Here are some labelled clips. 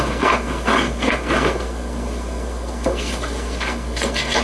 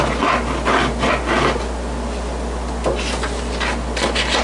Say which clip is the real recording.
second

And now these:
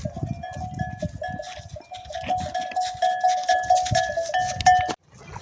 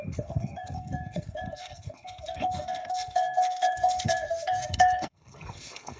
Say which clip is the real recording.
first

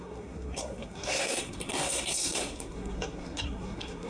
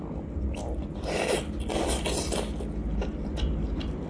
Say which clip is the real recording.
second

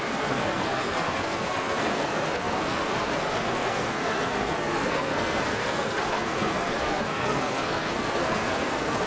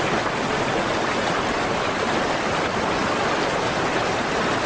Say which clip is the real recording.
second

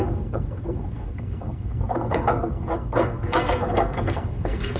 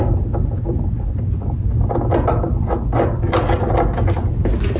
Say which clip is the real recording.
second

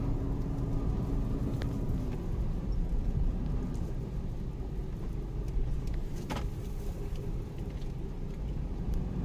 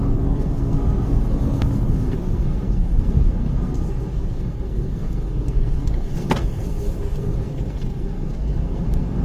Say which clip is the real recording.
first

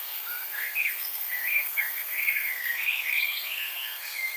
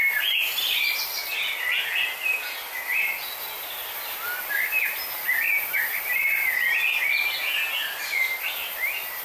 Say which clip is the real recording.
second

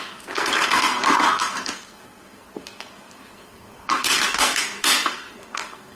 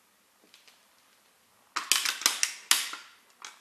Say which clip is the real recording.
second